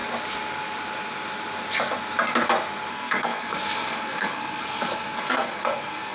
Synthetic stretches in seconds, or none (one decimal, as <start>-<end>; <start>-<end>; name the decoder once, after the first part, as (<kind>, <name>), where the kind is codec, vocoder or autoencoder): 2.9-6.1 (codec, SNAC)